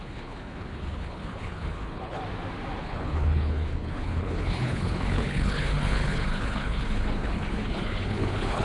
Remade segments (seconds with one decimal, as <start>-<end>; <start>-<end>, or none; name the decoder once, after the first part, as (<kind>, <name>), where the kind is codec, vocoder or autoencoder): 0.0-2.2 (codec, HILCodec); 2.8-8.6